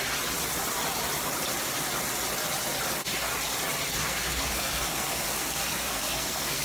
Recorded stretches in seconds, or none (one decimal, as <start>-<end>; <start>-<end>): 0.0-3.9